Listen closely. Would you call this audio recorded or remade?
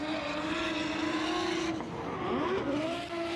recorded